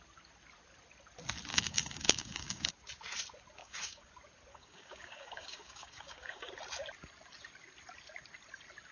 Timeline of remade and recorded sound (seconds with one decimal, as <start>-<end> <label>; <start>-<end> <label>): 0.0-1.5 recorded; 1.5-2.7 remade; 2.7-3.6 recorded; 3.6-4.1 remade; 4.1-4.5 recorded; 4.5-6.5 remade; 6.5-8.9 recorded